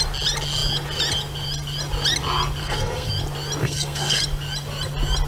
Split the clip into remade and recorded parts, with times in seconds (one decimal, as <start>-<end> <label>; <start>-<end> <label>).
0.0-2.6 recorded; 2.6-3.1 remade; 3.1-3.6 recorded; 3.6-4.2 remade; 4.2-5.3 recorded